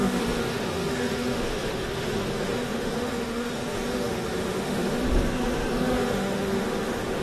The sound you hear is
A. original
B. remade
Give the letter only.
B